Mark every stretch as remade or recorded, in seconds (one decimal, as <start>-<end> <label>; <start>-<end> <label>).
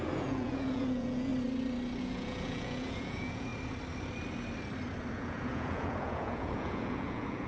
0.0-1.3 remade; 1.3-2.0 recorded; 2.0-3.5 remade; 3.5-5.1 recorded; 5.1-7.5 remade